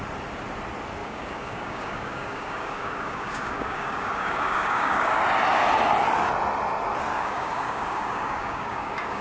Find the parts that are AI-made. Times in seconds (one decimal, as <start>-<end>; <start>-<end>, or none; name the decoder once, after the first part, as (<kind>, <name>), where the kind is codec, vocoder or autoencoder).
1.0-5.2 (codec, DAC); 7.1-9.2